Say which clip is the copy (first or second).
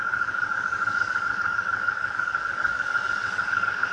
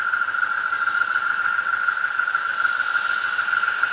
first